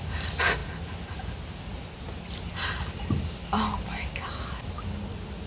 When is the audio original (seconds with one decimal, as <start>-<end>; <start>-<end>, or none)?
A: 0.0-5.5